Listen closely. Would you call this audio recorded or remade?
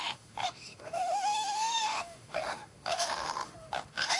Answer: remade